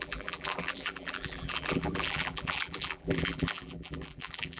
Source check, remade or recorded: remade